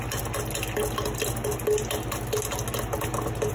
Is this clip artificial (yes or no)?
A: no